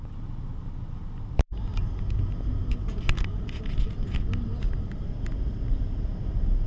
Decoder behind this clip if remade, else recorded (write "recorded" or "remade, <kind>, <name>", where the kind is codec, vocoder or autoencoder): recorded